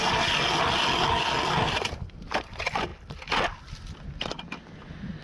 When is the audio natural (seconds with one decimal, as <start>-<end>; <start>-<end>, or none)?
0.0-5.2